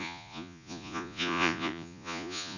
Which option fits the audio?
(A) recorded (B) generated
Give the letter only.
B